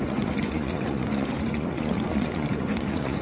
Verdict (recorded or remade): remade